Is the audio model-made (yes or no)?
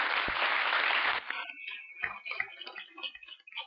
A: no